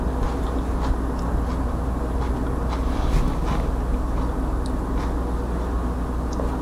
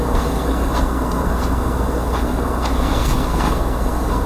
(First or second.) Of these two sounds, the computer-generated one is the second